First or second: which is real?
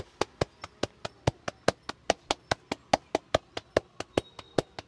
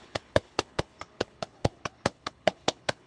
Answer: first